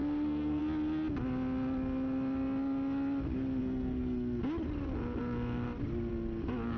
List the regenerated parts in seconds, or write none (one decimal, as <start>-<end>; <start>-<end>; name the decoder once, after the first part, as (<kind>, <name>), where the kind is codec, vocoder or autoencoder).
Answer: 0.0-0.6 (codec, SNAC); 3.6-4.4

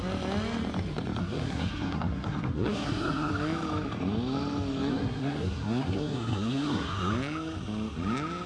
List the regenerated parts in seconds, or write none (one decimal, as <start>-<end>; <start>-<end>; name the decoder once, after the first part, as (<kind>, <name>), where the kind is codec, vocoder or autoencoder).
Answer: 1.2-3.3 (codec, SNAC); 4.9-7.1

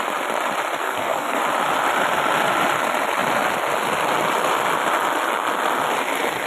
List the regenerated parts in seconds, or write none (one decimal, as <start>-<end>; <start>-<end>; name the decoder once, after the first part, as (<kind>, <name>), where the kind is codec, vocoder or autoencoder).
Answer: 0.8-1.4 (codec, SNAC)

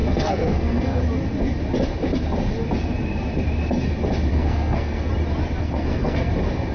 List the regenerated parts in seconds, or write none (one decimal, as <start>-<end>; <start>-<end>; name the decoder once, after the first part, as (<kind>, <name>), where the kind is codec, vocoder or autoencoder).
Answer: 0.0-1.0 (codec, SNAC); 4.3-5.1; 5.6-6.3